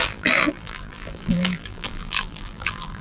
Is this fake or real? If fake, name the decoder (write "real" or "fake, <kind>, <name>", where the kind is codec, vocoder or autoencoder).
fake, vocoder, BigVGAN v2